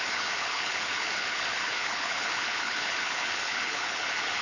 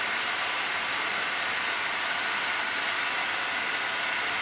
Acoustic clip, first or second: second